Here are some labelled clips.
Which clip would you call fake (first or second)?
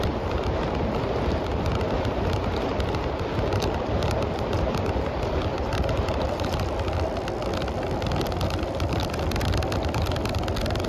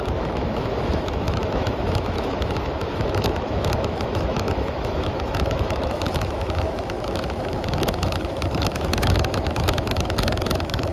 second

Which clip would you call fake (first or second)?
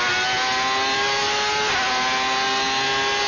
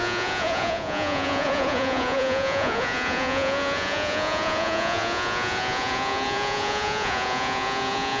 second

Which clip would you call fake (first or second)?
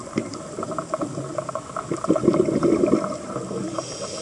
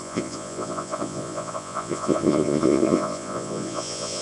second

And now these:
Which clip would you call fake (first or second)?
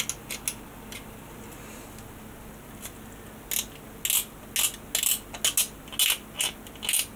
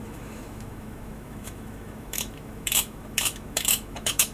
second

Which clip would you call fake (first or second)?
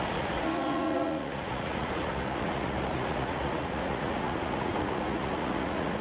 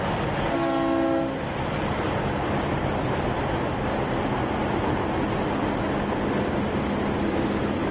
first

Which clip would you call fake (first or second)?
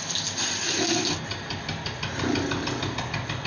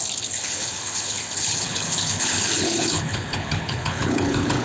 second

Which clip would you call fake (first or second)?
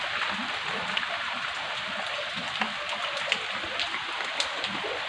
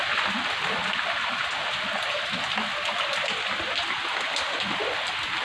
first